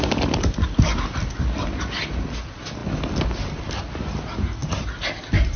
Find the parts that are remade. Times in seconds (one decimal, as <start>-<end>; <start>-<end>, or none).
none